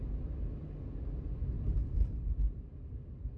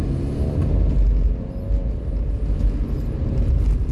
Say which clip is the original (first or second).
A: second